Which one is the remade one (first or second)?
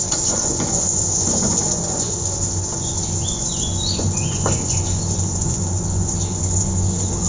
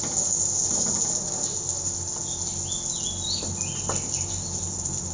first